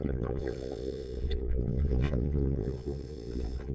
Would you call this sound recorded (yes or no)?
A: no